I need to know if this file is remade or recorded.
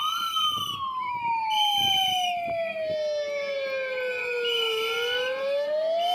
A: recorded